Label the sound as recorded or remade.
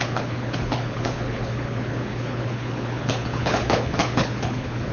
remade